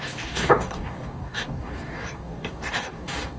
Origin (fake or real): fake